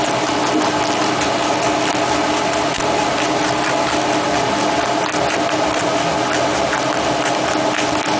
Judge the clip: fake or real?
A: real